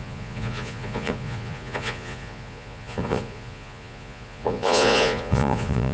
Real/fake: fake